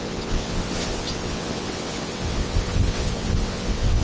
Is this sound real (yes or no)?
no